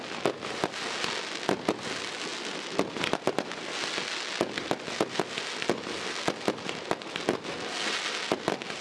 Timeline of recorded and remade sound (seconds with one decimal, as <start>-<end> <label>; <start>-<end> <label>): 0.0-8.8 recorded